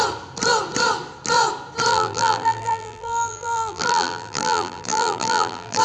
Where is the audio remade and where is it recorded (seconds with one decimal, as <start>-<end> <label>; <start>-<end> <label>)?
0.0-1.9 recorded; 1.9-5.8 remade